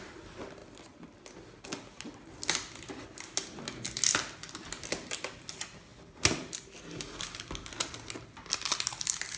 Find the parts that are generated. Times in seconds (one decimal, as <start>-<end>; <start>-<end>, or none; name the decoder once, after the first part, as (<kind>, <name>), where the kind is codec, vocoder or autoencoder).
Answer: none